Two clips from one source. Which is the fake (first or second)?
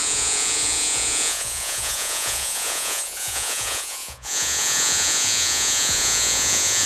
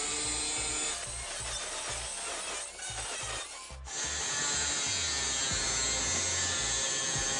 first